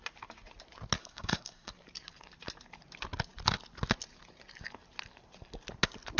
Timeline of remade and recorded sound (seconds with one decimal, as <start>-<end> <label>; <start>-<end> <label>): 0.0-1.0 recorded; 1.0-1.7 remade; 1.7-6.2 recorded